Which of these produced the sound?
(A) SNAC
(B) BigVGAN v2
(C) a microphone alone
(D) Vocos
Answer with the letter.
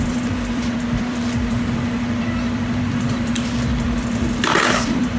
B